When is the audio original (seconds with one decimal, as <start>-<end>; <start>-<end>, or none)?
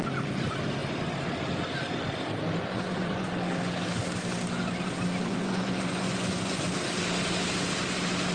0.0-2.6; 3.3-5.3; 6.6-8.3